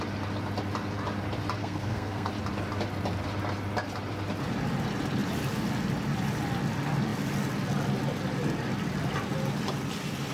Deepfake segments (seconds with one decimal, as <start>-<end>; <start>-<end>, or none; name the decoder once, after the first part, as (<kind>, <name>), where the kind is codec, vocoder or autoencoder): 1.6-2.3 (codec, SNAC)